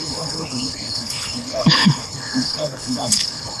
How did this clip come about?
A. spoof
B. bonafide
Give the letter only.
A